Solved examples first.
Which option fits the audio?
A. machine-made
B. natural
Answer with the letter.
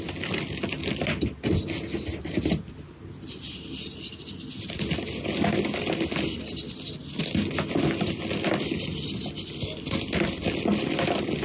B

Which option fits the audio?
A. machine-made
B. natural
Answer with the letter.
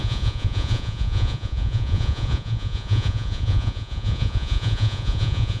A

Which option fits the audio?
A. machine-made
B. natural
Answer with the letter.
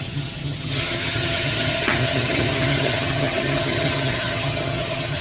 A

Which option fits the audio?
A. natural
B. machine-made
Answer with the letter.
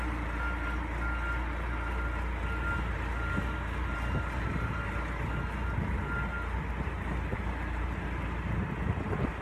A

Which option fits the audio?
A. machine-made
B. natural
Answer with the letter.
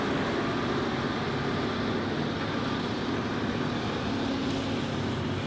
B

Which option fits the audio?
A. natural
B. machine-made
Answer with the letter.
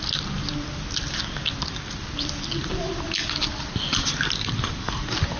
A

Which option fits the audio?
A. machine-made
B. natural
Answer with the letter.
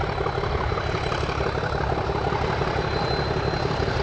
B